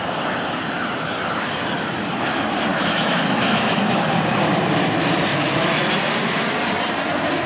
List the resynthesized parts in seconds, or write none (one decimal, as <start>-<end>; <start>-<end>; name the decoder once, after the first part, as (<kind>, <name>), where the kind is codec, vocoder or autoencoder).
2.7-4.1 (autoencoder, DAC-VAE); 5.3-5.8